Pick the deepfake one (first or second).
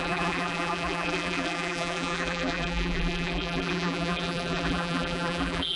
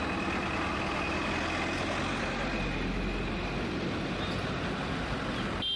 first